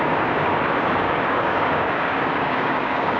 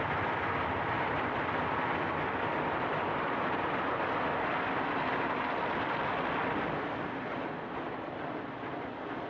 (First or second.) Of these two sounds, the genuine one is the second